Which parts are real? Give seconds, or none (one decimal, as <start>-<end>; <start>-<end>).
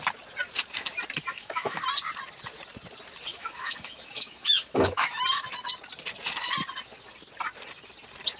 0.0-1.3; 1.8-3.3; 5.2-8.4